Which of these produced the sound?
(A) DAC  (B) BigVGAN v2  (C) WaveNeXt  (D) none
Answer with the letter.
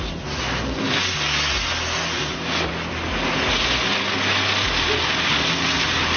D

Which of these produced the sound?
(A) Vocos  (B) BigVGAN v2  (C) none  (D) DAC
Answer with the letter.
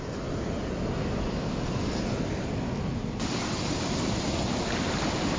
C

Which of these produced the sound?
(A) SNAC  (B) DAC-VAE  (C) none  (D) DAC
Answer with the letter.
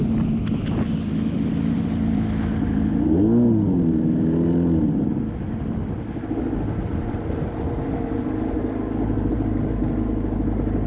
C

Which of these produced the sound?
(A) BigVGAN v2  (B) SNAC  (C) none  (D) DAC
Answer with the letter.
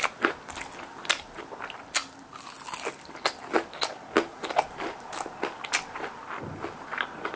C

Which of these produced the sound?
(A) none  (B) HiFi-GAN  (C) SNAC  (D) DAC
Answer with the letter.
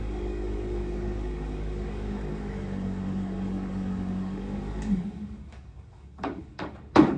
D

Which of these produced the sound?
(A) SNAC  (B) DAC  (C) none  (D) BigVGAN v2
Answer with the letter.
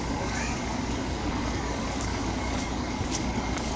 B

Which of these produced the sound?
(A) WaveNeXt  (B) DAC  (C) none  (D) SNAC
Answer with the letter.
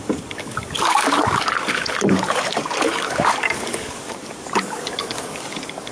B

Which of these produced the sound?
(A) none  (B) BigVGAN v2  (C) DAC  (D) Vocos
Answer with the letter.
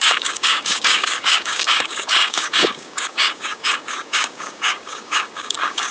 C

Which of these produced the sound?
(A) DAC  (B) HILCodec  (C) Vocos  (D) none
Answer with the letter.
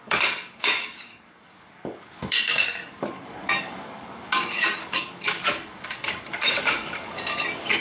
A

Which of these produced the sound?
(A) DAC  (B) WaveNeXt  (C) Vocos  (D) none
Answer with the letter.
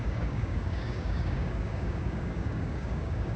A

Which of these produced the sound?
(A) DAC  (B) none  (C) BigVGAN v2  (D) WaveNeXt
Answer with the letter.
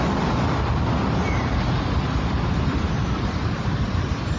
B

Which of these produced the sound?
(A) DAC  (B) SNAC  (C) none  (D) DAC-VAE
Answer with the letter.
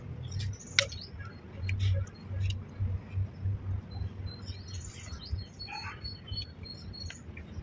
C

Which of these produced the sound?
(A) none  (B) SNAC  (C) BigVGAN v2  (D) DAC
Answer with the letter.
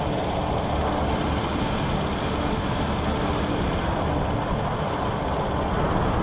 A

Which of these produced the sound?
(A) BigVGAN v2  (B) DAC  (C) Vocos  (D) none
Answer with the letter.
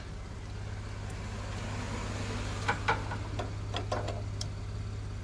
D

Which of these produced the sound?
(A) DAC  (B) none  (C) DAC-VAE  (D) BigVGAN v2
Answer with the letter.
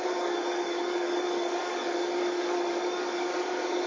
A